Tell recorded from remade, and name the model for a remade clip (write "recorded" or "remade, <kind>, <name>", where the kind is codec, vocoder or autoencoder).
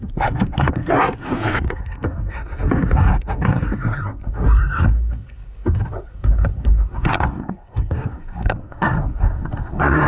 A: remade, codec, SNAC